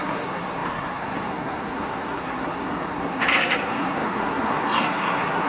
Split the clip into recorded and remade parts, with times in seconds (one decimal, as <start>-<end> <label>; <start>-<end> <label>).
0.0-5.5 remade